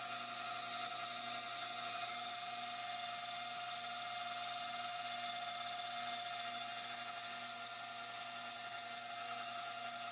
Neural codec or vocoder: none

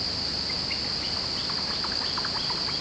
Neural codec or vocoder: none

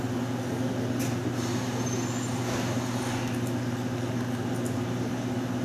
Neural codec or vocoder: none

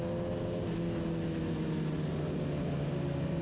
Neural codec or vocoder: none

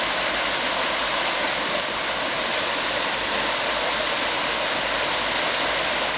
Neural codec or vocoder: none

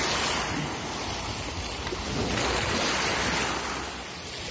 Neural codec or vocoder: none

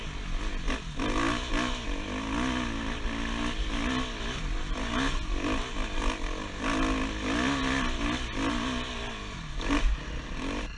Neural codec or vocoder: none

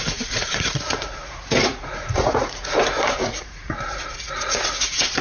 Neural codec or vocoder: vocoder, Vocos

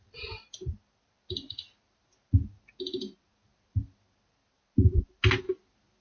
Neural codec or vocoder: none